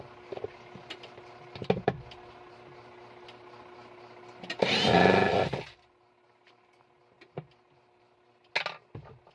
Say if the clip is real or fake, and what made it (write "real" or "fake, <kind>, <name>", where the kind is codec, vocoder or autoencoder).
real